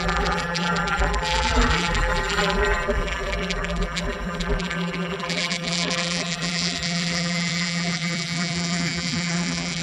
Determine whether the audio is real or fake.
fake